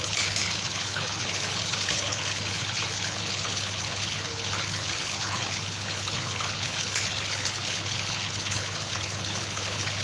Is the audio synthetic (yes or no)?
yes